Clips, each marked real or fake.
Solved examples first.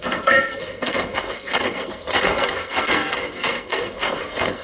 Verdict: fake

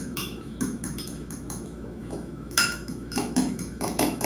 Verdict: fake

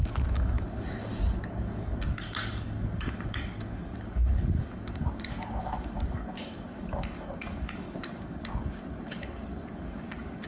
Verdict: fake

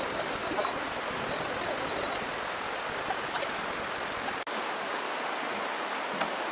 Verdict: real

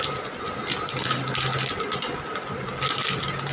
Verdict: real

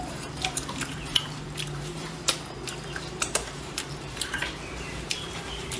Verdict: fake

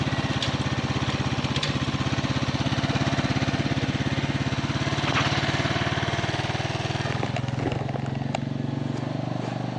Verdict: real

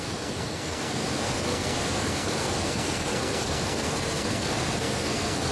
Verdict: fake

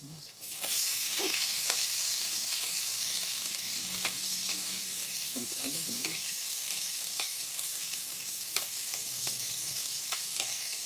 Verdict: fake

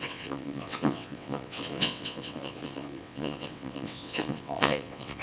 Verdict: fake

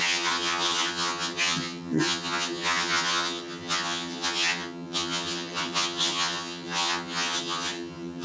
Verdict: fake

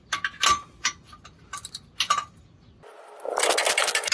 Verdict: real